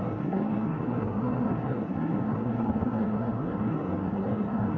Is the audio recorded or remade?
remade